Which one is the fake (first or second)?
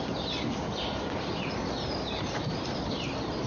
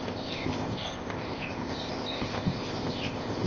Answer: second